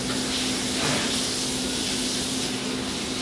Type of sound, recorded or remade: recorded